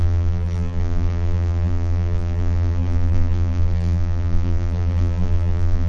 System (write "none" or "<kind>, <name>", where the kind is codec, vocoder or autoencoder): vocoder, BigVGAN v2